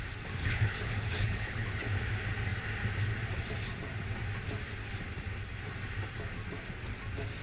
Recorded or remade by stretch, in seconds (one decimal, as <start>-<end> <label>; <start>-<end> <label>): 0.0-0.4 recorded; 0.4-1.9 remade; 1.9-7.4 recorded